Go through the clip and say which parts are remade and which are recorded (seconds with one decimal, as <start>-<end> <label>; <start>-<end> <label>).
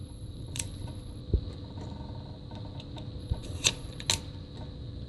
0.0-1.2 remade; 1.2-3.2 recorded; 3.2-4.1 remade; 4.1-5.1 recorded